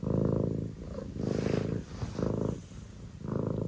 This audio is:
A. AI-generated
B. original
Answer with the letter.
B